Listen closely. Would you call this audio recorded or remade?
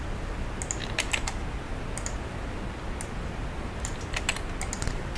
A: recorded